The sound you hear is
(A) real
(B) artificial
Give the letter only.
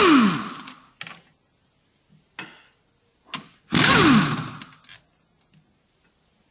A